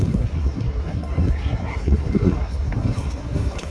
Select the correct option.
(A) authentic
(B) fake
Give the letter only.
B